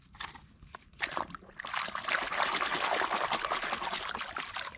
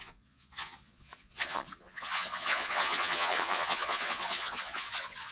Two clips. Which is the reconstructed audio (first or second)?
second